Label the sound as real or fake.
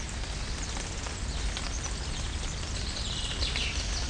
real